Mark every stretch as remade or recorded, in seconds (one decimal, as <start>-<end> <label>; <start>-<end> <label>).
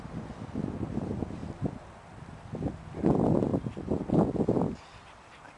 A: 0.0-5.6 recorded